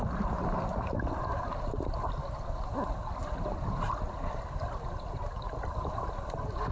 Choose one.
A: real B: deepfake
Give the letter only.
B